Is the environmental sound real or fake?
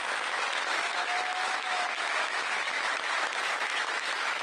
fake